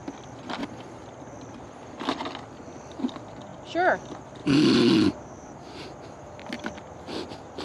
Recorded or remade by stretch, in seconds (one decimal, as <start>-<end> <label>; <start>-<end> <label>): 0.0-4.4 recorded; 4.4-5.8 remade; 5.8-7.6 recorded